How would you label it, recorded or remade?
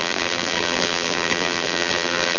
remade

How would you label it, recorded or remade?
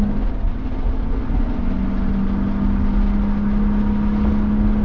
recorded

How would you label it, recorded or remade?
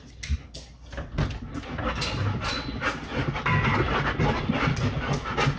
recorded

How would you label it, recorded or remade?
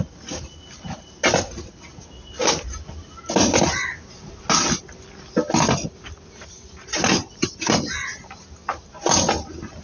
recorded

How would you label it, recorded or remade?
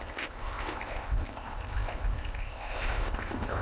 remade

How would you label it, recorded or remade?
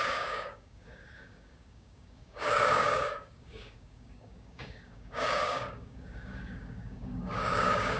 remade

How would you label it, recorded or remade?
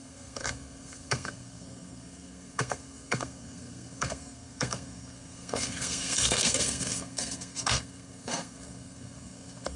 remade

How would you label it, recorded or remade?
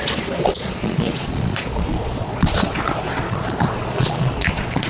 remade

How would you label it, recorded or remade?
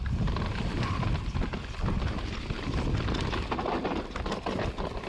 recorded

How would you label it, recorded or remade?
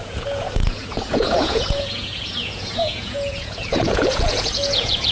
remade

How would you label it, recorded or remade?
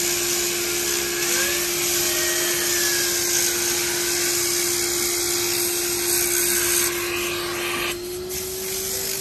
recorded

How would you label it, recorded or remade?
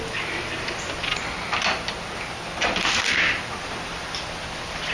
recorded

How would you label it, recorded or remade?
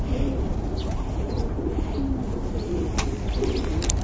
recorded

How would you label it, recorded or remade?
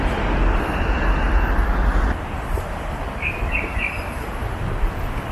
recorded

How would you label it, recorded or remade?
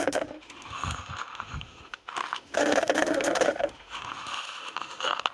remade